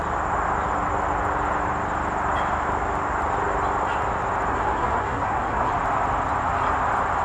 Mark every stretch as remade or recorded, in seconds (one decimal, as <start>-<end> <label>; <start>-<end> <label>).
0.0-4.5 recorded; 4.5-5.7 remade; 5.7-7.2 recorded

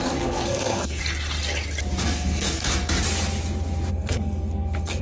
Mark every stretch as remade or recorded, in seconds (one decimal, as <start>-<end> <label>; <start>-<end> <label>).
0.0-1.0 remade; 1.0-2.0 recorded; 2.0-2.6 remade; 2.6-3.9 recorded; 3.9-5.0 remade

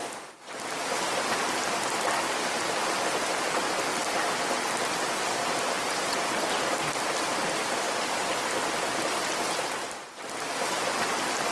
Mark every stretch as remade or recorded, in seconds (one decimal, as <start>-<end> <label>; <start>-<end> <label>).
0.0-11.5 recorded

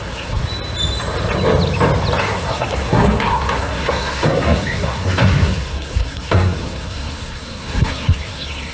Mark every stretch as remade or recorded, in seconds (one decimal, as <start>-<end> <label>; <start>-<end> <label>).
0.0-0.4 remade; 0.4-2.2 recorded; 2.2-8.7 remade